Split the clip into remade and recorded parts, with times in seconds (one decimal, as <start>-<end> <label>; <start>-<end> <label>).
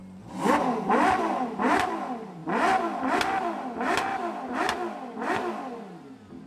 0.0-6.5 recorded